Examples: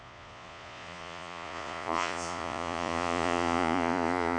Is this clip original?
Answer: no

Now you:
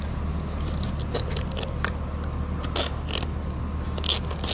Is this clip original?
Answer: yes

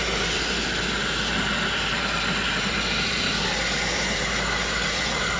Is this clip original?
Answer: yes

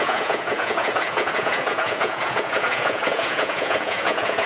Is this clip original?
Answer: no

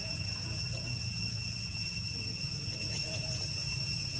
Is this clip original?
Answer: no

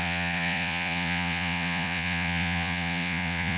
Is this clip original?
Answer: no